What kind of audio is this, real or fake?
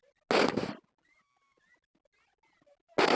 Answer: real